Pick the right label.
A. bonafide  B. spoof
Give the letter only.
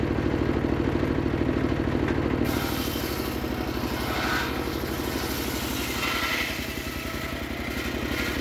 A